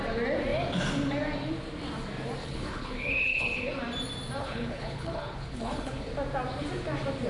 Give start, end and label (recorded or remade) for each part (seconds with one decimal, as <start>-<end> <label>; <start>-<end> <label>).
0.0-2.4 recorded; 2.4-3.7 remade; 3.7-4.4 recorded; 4.4-6.1 remade; 6.1-7.3 recorded